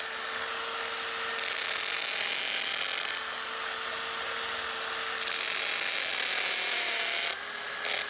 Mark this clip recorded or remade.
recorded